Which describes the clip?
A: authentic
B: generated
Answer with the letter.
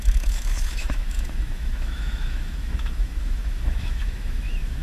B